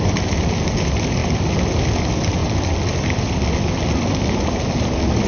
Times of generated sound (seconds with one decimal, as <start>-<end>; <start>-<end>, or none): none